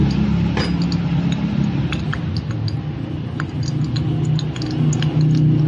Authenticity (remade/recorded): recorded